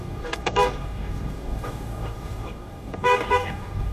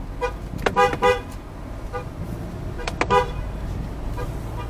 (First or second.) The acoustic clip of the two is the second